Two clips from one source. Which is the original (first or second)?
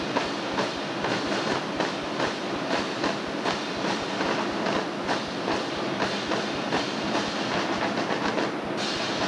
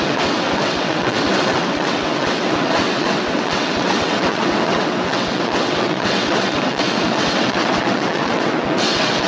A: first